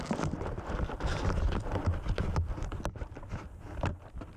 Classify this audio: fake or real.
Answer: real